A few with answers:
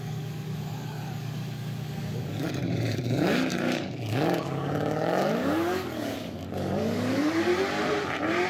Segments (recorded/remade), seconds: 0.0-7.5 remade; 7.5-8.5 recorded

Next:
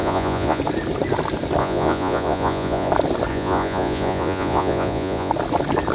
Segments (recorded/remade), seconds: 0.0-0.6 remade; 0.6-1.6 recorded; 1.6-2.9 remade; 2.9-3.3 recorded; 3.3-5.3 remade; 5.3-5.9 recorded

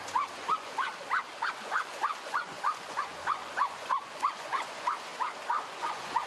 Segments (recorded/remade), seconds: 0.0-0.9 remade; 0.9-1.5 recorded; 1.5-5.1 remade; 5.1-5.7 recorded; 5.7-6.3 remade

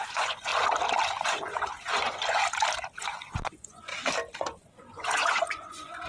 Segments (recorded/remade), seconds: 0.0-0.5 remade; 0.5-1.2 recorded; 1.2-2.4 remade; 2.4-2.9 recorded; 2.9-3.9 remade; 3.9-4.4 recorded; 4.4-6.1 remade

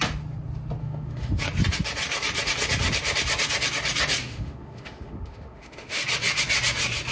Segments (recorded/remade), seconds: 0.0-0.8 recorded; 0.8-1.4 remade; 1.4-4.2 recorded; 4.2-6.0 remade; 6.0-7.1 recorded